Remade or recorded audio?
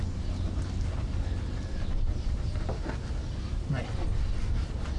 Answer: recorded